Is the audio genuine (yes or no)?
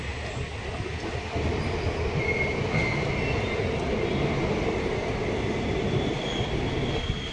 yes